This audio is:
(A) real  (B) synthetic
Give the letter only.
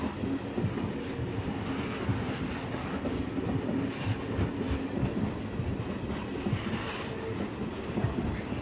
A